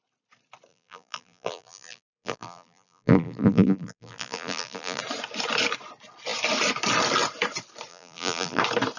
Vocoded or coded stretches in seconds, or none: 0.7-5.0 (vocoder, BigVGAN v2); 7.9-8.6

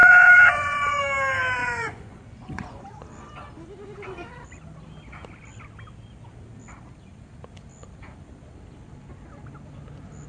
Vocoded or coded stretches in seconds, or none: 0.0-1.0 (vocoder, Vocos); 1.6-2.8

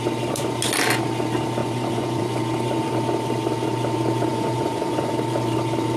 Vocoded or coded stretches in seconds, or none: 1.6-2.4 (vocoder, Vocos); 4.3-5.1

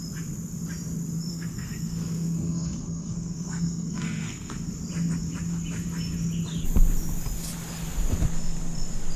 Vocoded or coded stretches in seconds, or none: 1.3-4.7 (codec, SNAC)

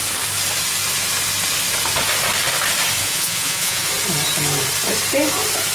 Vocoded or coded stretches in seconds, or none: 3.0-3.9 (vocoder, Vocos)

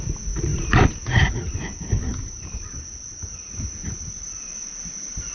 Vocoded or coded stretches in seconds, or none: 2.1-2.8 (vocoder, BigVGAN v2); 3.8-4.4

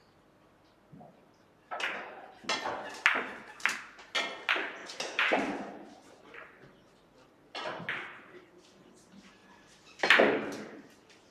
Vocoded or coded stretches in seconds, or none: 1.1-2.1 (vocoder, BigVGAN v2); 4.8-7.8; 9.4-11.3

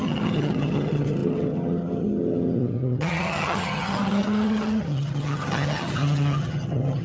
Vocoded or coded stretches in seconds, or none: 0.0-7.0 (vocoder, HiFi-GAN)